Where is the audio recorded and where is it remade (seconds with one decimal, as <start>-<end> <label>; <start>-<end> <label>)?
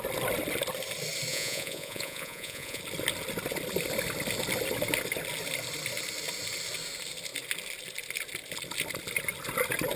0.0-1.3 recorded; 1.3-2.8 remade; 2.8-10.0 recorded